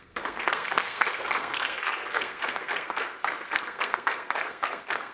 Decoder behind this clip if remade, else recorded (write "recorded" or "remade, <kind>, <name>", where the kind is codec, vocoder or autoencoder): remade, codec, SNAC